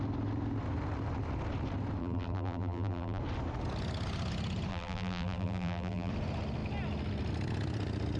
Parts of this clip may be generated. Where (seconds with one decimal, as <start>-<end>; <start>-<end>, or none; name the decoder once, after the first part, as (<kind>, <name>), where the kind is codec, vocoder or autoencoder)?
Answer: 2.0-3.2 (vocoder, BigVGAN v2); 4.7-6.1